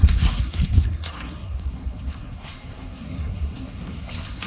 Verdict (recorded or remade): remade